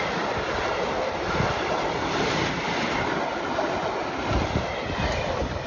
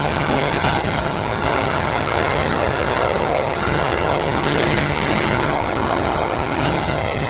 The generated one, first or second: second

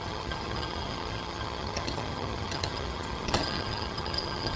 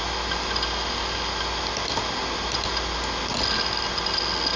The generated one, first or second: first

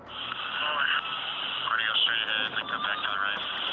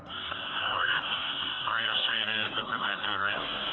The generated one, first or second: second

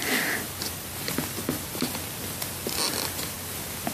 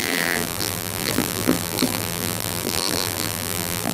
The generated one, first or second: second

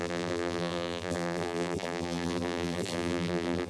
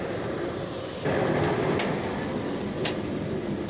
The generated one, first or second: first